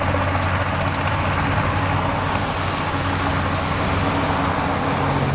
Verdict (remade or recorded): recorded